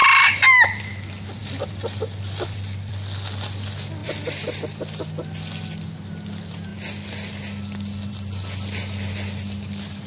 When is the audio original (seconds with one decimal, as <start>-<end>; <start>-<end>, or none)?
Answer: 0.0-1.4; 2.9-4.0; 4.7-10.1